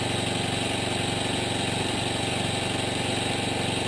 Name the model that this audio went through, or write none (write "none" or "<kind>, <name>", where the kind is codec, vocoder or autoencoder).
none